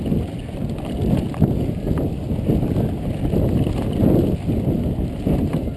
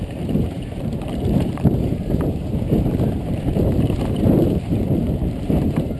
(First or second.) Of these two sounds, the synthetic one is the second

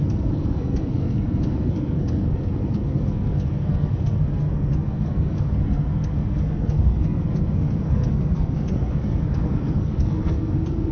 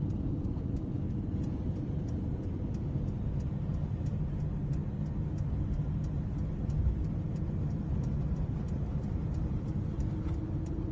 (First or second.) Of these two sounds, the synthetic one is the first